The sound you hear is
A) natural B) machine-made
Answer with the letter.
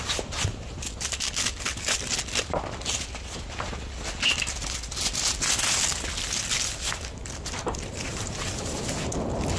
A